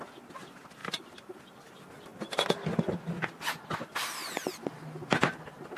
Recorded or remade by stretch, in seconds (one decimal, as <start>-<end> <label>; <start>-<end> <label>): 0.0-0.8 recorded; 0.8-1.6 remade; 1.6-5.8 recorded